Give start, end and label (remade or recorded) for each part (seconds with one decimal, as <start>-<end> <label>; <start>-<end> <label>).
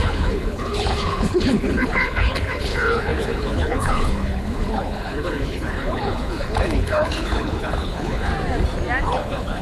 0.0-8.3 remade; 8.3-9.0 recorded; 9.0-9.6 remade